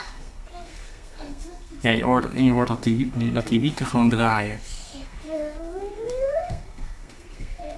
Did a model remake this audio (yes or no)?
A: yes